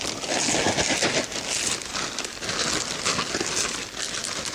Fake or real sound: real